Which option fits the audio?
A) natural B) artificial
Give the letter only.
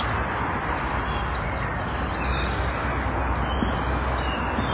A